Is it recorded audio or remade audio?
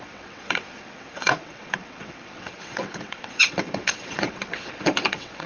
remade